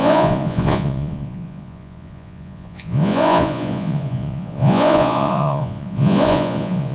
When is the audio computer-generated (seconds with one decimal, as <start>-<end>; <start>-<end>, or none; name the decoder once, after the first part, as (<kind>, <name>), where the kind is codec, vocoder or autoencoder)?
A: 0.0-6.9 (vocoder, Vocos)